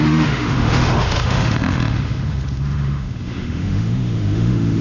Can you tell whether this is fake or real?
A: fake